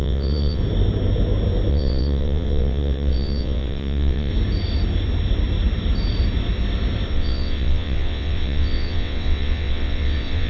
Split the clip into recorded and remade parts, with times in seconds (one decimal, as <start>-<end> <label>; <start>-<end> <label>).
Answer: 0.0-0.6 remade; 0.6-1.7 recorded; 1.7-4.3 remade; 4.3-7.1 recorded; 7.1-10.5 remade